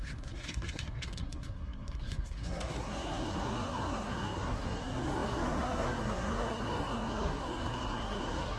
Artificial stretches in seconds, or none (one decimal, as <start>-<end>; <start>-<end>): 0.0-8.6